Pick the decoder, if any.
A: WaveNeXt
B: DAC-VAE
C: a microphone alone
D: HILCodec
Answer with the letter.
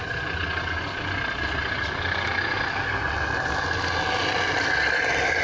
C